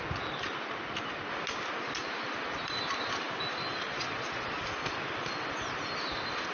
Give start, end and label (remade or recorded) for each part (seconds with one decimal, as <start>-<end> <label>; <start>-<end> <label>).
0.0-3.5 recorded; 3.5-4.6 remade; 4.6-6.5 recorded